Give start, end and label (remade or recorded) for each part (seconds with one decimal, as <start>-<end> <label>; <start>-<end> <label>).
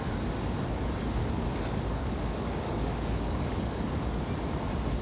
0.0-1.2 recorded; 1.2-4.2 remade; 4.2-5.0 recorded